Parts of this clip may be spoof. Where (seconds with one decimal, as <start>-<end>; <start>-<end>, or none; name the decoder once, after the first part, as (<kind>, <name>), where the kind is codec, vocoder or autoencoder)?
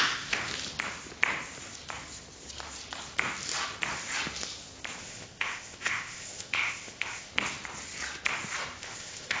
0.0-0.5 (codec, ZipCodec); 5.0-7.3; 8.8-9.4